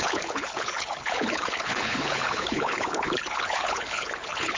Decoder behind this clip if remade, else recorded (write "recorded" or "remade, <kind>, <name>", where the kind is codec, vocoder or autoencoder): remade, codec, HILCodec